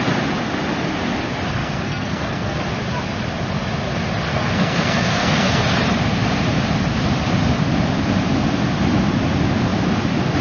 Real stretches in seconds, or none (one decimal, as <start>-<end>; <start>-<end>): 0.0-1.6; 2.6-4.3; 5.6-10.4